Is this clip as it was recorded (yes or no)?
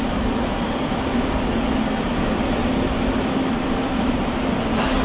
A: yes